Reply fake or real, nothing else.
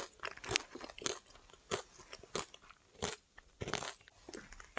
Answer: real